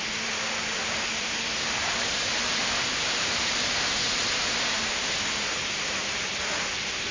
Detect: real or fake fake